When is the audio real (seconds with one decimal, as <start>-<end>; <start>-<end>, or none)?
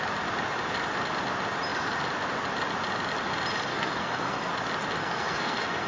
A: 0.0-3.7; 4.5-5.0